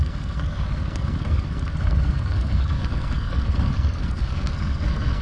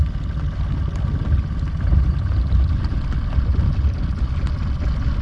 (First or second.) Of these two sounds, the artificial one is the first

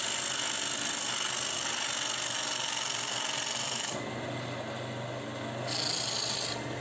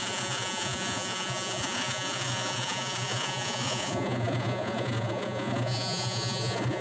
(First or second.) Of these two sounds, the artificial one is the second